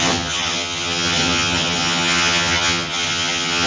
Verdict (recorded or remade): remade